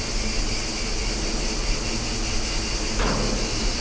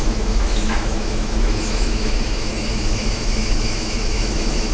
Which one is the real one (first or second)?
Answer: first